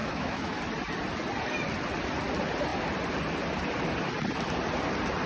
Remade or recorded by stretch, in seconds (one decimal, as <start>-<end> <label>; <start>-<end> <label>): 0.0-0.6 remade; 0.6-5.3 recorded